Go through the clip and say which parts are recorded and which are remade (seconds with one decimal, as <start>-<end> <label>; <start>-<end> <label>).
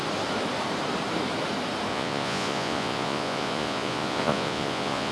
0.0-1.9 recorded; 1.9-5.1 remade